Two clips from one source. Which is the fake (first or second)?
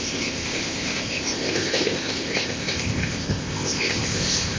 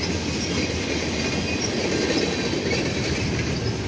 first